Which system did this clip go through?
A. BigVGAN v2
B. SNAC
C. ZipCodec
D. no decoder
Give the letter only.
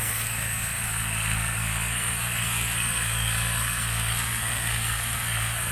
B